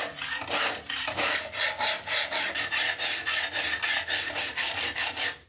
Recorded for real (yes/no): yes